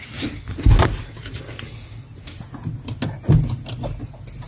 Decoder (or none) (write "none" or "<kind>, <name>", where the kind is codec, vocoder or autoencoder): none